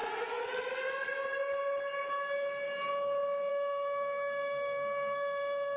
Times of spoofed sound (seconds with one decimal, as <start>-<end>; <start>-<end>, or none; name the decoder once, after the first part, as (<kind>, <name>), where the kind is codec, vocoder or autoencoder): 3.5-5.8 (codec, SNAC)